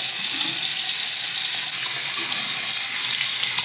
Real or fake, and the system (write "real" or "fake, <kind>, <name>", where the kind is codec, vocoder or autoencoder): real